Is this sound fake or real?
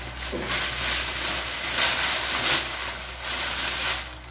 real